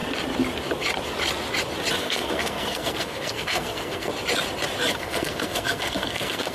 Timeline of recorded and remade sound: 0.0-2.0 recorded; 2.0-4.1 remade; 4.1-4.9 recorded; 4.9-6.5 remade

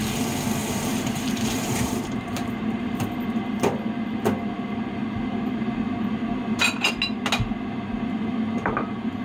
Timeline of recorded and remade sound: 0.0-0.6 recorded; 0.6-3.2 remade; 3.2-9.2 recorded

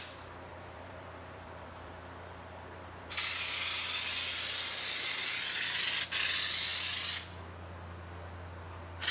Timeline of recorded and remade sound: 0.0-0.5 recorded; 0.5-3.5 remade; 3.5-9.1 recorded

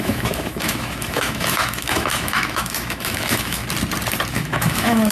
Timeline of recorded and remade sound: 0.0-3.6 remade; 3.6-4.3 recorded; 4.3-5.1 remade

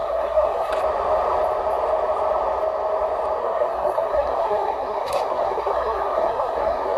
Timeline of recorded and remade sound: 0.0-0.7 remade; 0.7-3.4 recorded; 3.4-7.0 remade

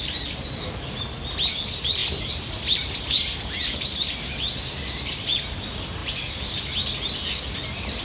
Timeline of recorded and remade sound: 0.0-2.0 recorded; 2.0-3.8 remade; 3.8-6.0 recorded; 6.0-6.6 remade; 6.6-8.0 recorded

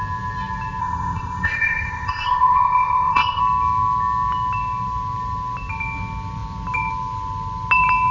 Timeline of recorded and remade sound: 0.0-0.8 recorded; 0.8-3.4 remade; 3.4-8.1 recorded

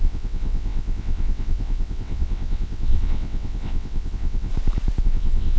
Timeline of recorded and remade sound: 0.0-4.5 remade; 4.5-5.0 recorded; 5.0-5.6 remade